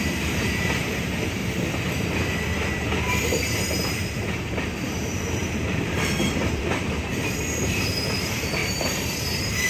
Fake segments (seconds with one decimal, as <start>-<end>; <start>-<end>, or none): 0.0-1.4; 3.0-7.1; 7.7-9.7